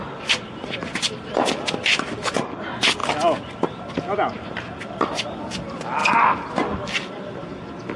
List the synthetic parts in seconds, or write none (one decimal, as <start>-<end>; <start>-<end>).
none